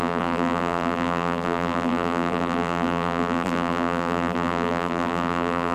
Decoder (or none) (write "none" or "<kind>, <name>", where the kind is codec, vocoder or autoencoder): vocoder, BigVGAN v2